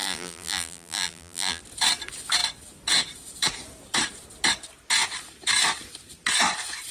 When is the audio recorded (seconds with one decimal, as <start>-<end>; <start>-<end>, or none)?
1.6-6.9